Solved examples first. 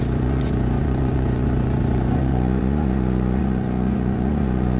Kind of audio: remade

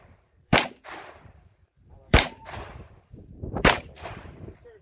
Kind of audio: remade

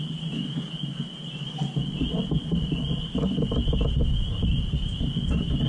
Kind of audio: recorded